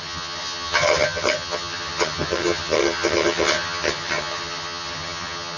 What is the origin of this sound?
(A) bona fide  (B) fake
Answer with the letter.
B